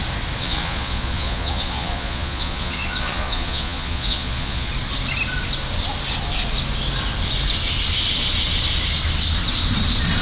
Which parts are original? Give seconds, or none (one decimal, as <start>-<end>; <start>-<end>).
0.0-0.4; 4.7-10.2